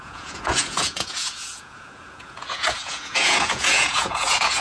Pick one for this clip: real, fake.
fake